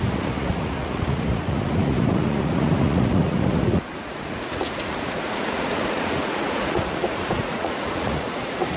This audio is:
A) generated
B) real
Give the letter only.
A